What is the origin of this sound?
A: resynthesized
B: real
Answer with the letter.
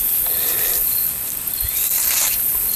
A